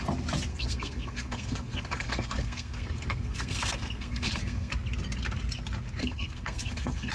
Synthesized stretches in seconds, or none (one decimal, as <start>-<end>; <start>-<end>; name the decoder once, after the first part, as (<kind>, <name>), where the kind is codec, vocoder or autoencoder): 0.5-4.7 (codec, SNAC); 6.0-7.1